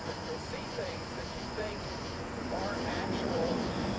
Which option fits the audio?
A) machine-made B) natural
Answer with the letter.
A